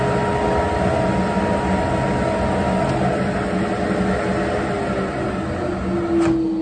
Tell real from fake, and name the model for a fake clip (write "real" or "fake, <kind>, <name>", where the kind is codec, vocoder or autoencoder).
real